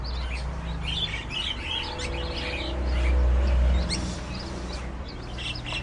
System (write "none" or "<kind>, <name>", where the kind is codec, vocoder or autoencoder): none